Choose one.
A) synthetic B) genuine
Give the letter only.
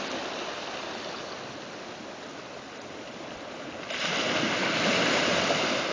B